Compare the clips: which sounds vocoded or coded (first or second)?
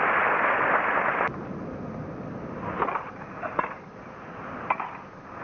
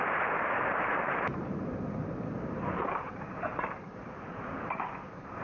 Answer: second